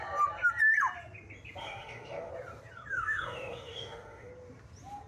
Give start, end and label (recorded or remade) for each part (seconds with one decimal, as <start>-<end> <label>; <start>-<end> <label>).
0.0-1.6 recorded; 1.6-2.3 remade; 2.3-2.9 recorded; 2.9-4.3 remade; 4.3-5.1 recorded